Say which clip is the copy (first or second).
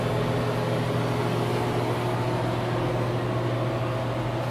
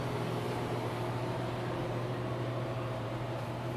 second